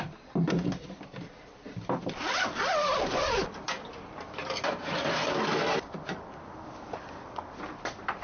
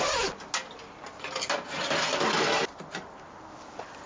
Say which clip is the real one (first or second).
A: second